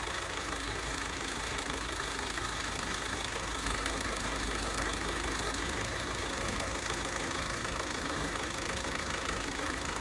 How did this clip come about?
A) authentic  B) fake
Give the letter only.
B